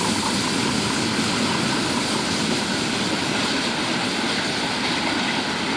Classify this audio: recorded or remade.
recorded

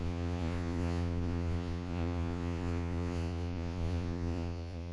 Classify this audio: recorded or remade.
remade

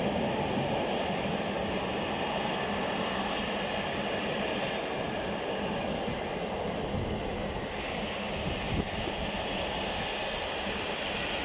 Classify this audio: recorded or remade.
recorded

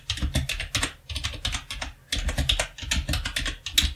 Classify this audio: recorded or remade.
recorded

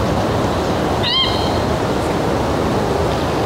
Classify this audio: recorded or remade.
recorded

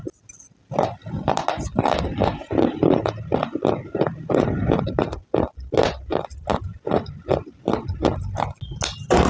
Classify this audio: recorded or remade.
recorded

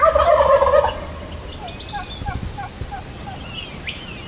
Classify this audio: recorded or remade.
recorded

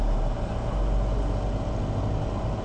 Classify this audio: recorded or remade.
recorded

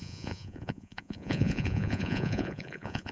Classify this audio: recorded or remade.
remade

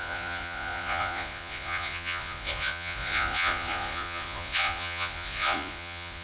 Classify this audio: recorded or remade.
remade